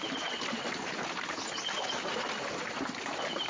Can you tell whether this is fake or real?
fake